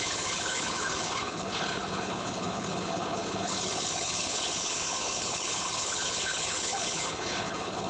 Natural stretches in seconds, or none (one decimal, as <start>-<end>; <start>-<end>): none